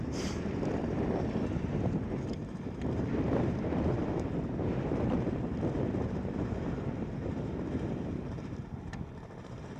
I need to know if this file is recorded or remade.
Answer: remade